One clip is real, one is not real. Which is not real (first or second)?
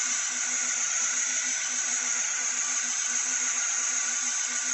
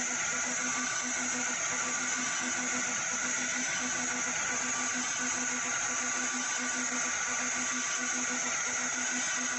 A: first